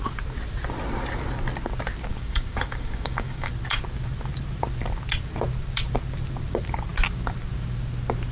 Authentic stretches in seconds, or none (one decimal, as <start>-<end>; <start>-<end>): 0.0-2.1; 3.5-8.3